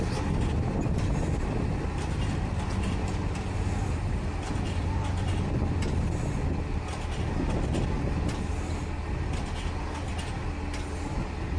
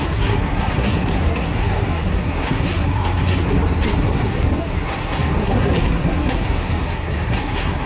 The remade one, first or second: second